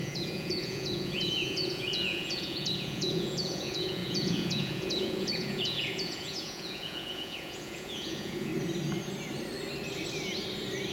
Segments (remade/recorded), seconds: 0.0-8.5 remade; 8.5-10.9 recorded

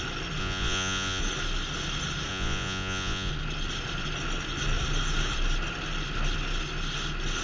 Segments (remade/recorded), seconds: 0.0-0.4 recorded; 0.4-1.2 remade; 1.2-2.3 recorded; 2.3-3.3 remade; 3.3-7.4 recorded

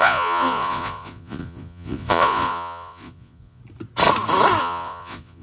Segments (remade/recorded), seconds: 0.0-3.6 remade; 3.6-4.6 recorded; 4.6-5.4 remade

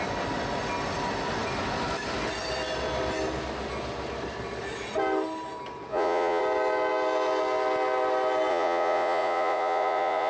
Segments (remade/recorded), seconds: 0.0-5.9 recorded; 5.9-6.4 remade; 6.4-8.5 recorded; 8.5-10.3 remade

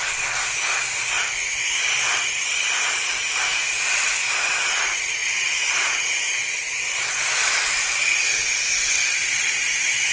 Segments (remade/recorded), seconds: 0.0-5.2 recorded; 5.2-6.4 remade; 6.4-9.2 recorded; 9.2-10.1 remade

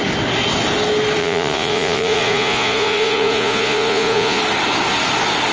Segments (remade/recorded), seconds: 0.0-1.2 recorded; 1.2-4.4 remade; 4.4-5.5 recorded

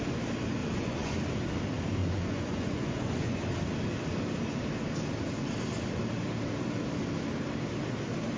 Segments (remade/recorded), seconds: 0.0-0.6 recorded; 0.6-1.2 remade; 1.2-2.0 recorded; 2.0-3.4 remade; 3.4-8.4 recorded